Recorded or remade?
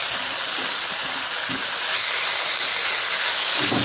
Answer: recorded